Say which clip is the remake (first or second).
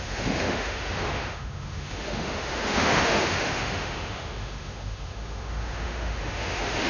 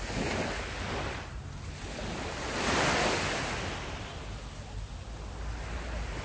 first